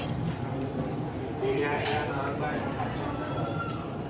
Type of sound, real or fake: real